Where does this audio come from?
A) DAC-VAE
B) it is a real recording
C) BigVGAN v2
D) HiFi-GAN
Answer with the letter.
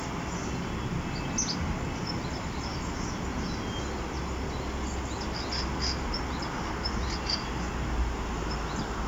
B